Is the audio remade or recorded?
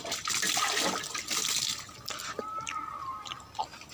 recorded